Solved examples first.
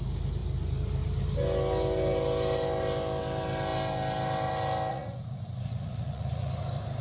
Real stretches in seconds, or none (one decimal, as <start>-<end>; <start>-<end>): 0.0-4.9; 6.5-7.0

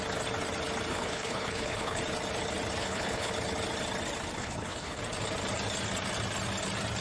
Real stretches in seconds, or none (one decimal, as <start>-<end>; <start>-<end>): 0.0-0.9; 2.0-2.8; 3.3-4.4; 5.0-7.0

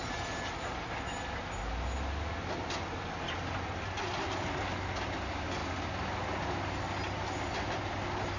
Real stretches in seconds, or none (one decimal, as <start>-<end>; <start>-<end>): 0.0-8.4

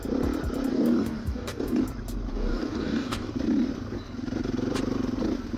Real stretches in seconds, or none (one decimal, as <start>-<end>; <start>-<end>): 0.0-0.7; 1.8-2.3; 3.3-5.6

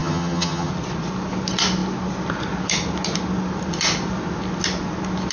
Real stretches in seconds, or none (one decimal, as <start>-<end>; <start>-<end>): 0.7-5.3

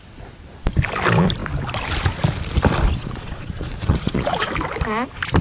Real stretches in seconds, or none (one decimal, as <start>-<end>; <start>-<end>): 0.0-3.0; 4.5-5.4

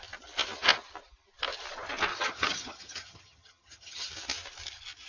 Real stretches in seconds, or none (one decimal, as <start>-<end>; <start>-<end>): 0.0-2.1; 4.1-5.1

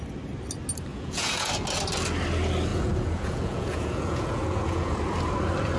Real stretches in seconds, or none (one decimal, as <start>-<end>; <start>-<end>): 0.0-0.9; 1.5-2.7; 5.0-5.8